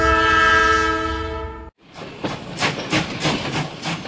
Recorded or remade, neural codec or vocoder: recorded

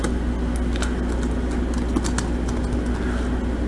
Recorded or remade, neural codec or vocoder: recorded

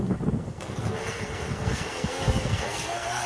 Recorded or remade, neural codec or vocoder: remade, codec, SNAC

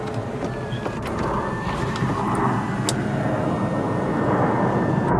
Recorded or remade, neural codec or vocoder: recorded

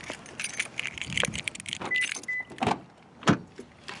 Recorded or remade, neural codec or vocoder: recorded